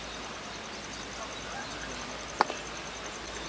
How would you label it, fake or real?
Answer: real